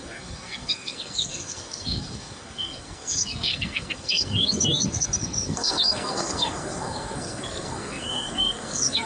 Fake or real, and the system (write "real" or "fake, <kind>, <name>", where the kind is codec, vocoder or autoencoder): fake, codec, SNAC